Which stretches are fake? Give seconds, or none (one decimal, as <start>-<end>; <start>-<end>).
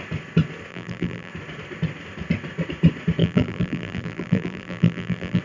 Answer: 0.7-1.3; 3.2-5.4